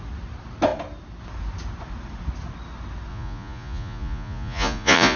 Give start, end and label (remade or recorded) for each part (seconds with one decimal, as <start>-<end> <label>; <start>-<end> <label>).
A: 0.0-3.1 recorded; 3.1-5.2 remade